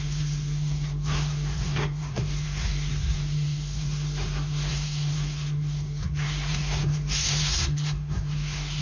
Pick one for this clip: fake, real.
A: fake